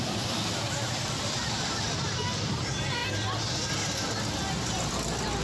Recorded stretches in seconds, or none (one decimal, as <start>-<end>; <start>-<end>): 3.0-4.9

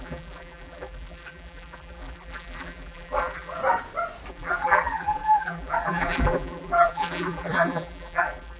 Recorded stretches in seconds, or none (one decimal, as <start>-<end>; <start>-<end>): 3.6-4.3

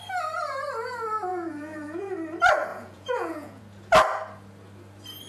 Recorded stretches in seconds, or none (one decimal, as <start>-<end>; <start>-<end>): 0.0-1.3; 2.1-2.7; 3.6-5.3